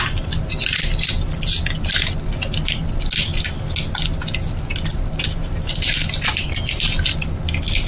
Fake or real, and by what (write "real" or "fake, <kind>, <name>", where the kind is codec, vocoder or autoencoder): real